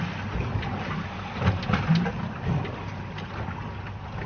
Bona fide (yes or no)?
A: yes